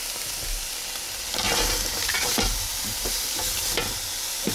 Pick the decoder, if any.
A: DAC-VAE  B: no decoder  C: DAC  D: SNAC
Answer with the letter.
B